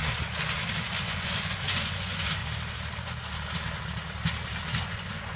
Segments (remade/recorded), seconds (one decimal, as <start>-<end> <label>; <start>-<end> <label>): 0.0-0.8 recorded; 0.8-2.4 remade; 2.4-4.8 recorded; 4.8-5.4 remade